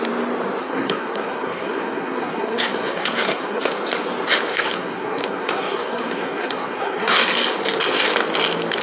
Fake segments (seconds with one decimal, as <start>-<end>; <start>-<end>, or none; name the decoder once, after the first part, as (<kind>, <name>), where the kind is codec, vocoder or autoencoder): 0.6-3.7 (codec, SNAC); 4.5-7.2